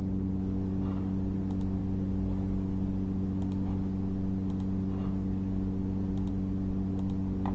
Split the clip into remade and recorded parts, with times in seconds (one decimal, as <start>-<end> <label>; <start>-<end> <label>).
0.0-7.5 recorded